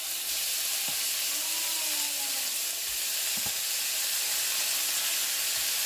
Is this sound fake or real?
real